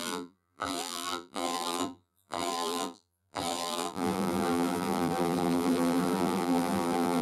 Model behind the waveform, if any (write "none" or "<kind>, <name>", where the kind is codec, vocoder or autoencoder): vocoder, BigVGAN v2